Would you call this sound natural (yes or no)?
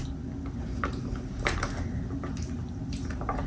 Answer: yes